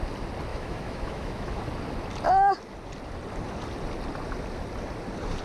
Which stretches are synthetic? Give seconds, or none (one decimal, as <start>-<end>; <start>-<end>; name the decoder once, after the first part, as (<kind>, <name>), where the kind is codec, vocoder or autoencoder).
0.5-1.6 (autoencoder, DAC-VAE)